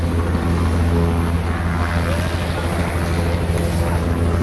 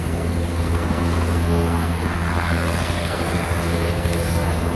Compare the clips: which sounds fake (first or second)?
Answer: second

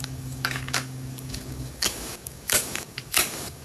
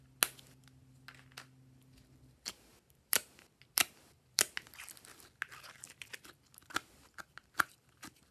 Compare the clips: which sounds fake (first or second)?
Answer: first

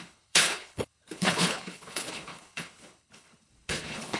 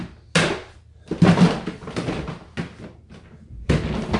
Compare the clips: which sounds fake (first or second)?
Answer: first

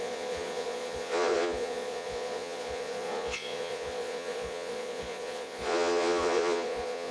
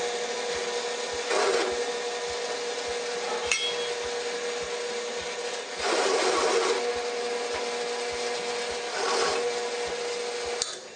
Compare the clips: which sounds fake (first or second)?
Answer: first